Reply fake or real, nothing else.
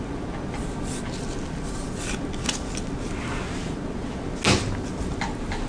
real